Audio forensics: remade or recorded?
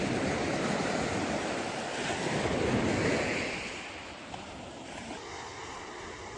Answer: recorded